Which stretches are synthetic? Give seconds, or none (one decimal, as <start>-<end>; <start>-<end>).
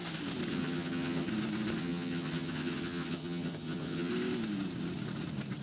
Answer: 0.5-1.3; 1.8-4.1